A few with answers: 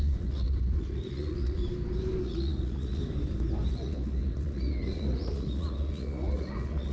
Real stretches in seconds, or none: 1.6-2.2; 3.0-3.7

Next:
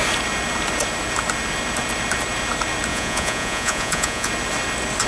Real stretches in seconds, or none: 0.0-2.9; 4.3-5.1

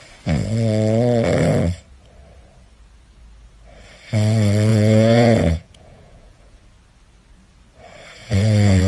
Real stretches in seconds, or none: 0.0-4.7; 6.6-8.2